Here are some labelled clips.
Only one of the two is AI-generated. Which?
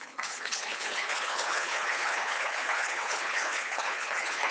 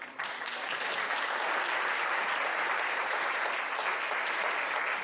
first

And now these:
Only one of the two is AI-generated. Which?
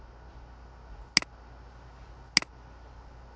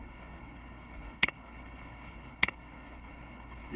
second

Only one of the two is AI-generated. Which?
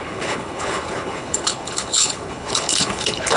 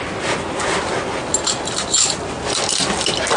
first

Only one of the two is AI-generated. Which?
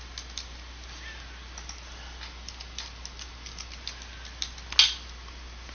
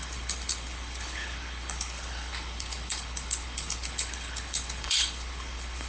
second